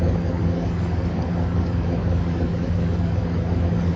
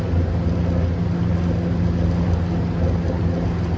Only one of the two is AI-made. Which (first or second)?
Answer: first